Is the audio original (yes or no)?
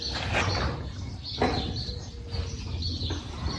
yes